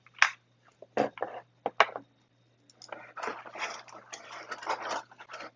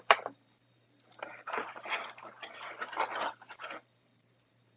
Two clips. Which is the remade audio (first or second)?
second